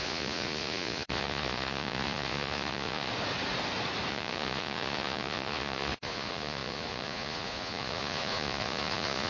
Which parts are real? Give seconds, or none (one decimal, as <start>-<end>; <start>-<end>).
3.1-4.1